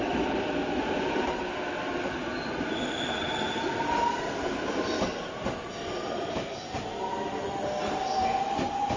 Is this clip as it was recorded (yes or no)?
yes